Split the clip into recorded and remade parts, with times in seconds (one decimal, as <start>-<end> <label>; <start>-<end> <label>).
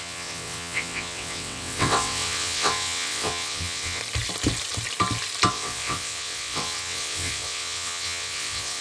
0.0-4.0 remade; 4.0-5.5 recorded; 5.5-8.8 remade